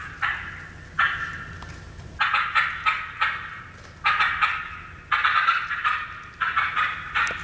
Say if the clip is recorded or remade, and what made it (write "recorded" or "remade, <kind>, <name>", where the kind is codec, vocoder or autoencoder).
recorded